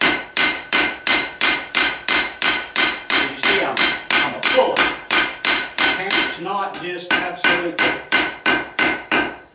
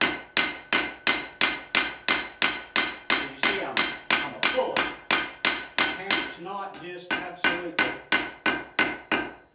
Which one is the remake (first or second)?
first